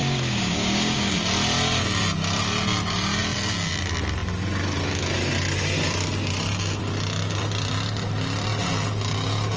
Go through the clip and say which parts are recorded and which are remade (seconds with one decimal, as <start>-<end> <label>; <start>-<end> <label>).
0.0-1.1 remade; 1.1-9.6 recorded